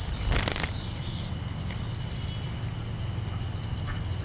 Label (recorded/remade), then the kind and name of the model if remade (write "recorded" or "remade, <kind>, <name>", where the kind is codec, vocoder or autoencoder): recorded